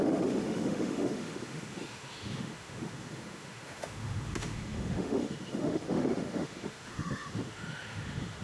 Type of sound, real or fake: fake